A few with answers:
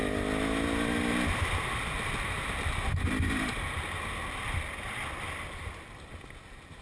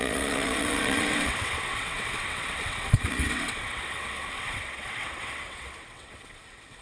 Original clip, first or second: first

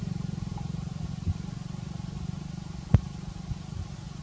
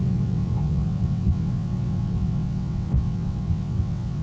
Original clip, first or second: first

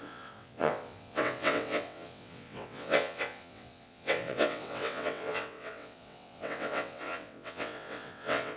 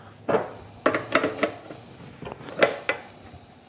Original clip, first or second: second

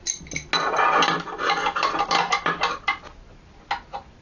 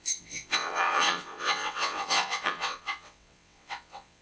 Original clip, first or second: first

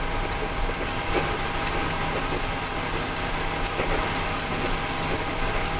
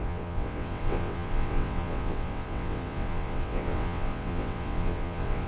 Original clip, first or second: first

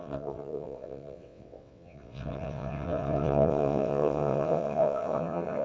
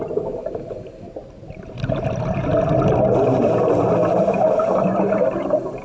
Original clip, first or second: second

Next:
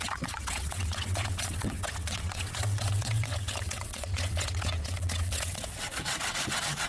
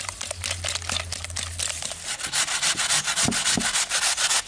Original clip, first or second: second